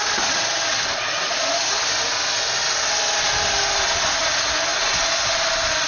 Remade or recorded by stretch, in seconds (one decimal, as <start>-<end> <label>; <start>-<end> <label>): 0.0-5.9 recorded